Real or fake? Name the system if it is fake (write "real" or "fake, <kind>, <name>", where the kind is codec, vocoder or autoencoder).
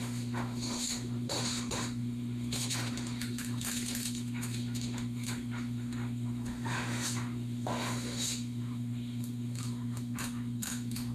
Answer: fake, autoencoder, DAC-VAE